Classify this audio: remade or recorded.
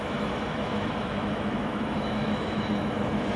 remade